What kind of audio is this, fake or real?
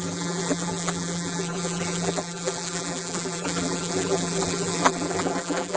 fake